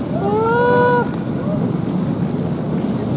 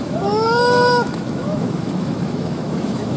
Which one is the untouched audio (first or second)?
first